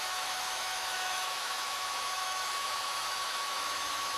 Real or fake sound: fake